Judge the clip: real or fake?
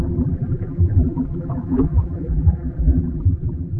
fake